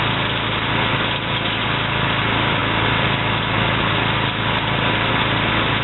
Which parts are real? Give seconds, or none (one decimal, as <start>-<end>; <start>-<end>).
0.0-5.8